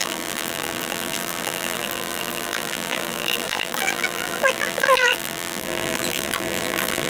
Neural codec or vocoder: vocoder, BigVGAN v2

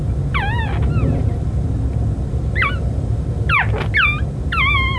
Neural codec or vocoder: none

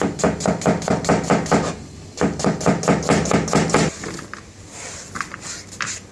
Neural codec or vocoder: none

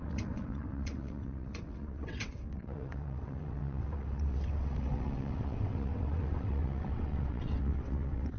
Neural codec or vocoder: vocoder, WaveNeXt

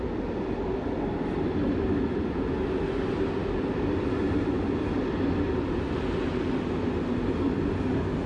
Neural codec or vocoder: none